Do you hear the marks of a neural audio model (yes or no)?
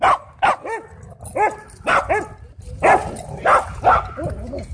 no